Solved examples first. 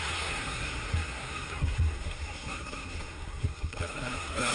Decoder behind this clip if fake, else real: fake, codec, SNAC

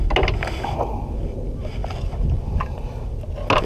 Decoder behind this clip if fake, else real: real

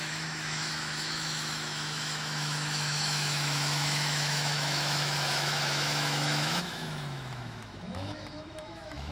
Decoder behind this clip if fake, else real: fake, autoencoder, DAC-VAE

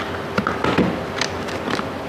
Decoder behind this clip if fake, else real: real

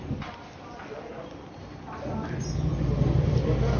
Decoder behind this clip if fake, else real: real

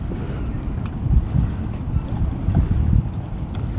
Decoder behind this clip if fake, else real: real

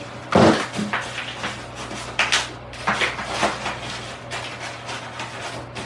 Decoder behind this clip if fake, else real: real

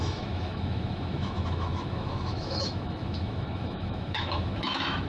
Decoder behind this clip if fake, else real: fake, autoencoder, DAC-VAE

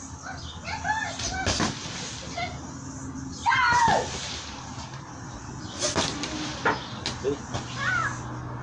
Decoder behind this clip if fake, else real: real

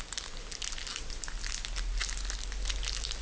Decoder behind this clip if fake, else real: real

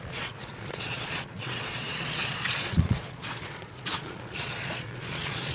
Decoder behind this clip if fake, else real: fake, vocoder, Vocos